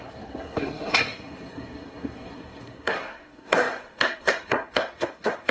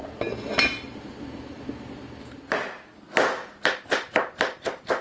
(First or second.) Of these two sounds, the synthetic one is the first